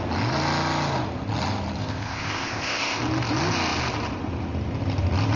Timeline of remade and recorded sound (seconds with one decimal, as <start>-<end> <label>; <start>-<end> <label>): 0.0-1.8 recorded; 1.8-3.0 remade; 3.0-5.4 recorded